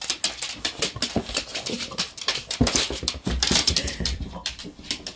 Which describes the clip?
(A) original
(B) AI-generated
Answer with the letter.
A